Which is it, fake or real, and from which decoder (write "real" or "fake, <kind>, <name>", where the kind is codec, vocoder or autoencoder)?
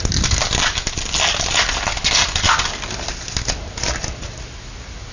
real